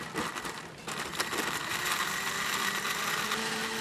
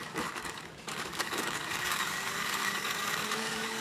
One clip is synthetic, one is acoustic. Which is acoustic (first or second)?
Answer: first